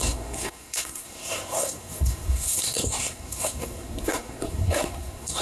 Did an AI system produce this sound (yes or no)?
yes